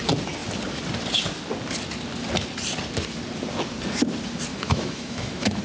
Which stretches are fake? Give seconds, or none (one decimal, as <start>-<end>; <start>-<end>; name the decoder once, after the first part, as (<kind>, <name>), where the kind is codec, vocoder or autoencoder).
4.5-5.6 (autoencoder, DAC-VAE)